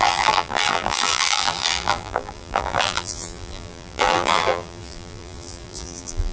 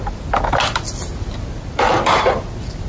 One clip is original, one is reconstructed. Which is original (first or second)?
second